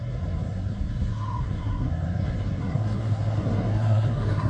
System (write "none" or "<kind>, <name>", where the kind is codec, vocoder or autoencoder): codec, SNAC